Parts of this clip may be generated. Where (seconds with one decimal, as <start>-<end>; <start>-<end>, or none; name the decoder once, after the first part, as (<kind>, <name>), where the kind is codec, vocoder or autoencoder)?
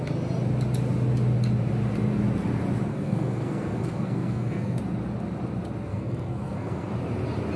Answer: 2.9-4.8 (codec, SNAC); 5.9-6.9